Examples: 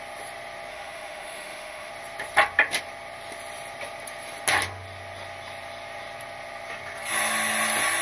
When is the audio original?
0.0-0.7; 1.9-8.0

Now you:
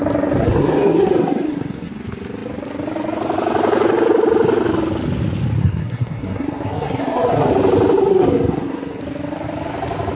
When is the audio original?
0.0-0.4; 1.9-5.6; 7.5-8.1; 9.0-10.1